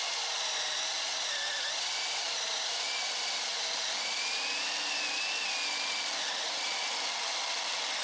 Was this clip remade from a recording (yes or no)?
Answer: no